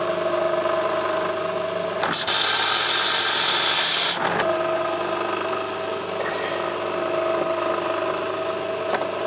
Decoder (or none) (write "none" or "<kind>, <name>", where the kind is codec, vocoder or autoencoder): none